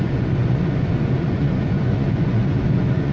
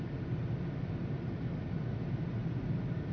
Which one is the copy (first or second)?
first